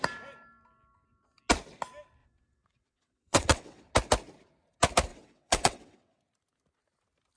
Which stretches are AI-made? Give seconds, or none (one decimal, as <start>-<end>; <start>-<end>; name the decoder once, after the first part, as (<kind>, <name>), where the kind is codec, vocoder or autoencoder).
2.2-3.9 (vocoder, WaveNeXt); 5.1-6.2